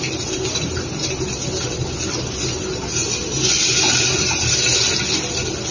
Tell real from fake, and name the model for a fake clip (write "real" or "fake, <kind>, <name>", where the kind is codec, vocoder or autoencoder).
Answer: real